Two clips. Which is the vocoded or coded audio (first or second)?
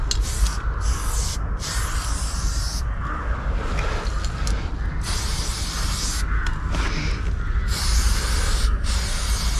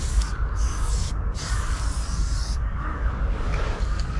second